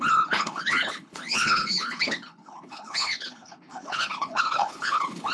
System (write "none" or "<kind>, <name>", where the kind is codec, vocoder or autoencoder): codec, HILCodec